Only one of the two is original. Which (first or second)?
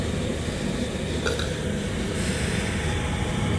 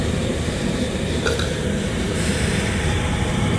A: first